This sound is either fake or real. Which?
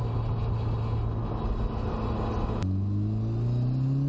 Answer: real